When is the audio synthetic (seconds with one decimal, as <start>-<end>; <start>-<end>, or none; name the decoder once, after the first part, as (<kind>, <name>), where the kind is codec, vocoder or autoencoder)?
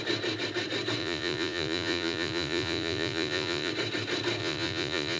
1.0-3.7 (vocoder, Vocos); 4.4-5.2